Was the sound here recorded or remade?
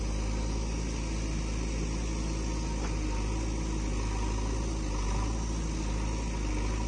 recorded